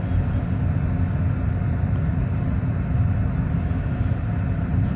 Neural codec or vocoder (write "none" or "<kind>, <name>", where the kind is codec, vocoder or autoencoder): none